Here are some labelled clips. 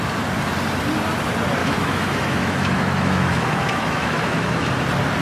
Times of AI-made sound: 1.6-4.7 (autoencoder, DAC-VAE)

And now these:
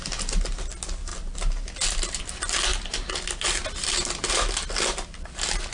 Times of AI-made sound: none

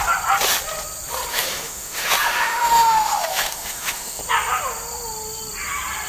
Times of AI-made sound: 1.3-4.2 (autoencoder, DAC-VAE)